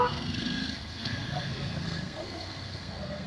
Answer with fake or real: fake